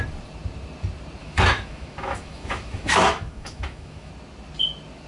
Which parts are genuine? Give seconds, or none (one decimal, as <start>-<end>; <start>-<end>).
0.0-1.2; 4.1-5.1